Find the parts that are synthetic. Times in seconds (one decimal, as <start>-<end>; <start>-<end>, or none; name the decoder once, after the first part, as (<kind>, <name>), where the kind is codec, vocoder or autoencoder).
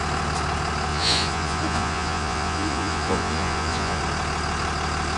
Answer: 0.9-4.0 (vocoder, Vocos)